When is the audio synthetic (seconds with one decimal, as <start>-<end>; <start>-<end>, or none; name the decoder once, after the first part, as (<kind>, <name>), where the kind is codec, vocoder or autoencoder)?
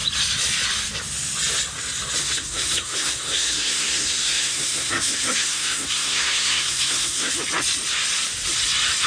2.2-7.3 (codec, SNAC)